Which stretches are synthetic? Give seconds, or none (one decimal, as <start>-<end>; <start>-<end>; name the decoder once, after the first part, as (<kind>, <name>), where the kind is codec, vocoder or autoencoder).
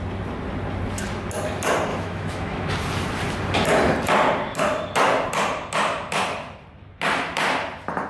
1.9-2.7 (autoencoder, DAC-VAE)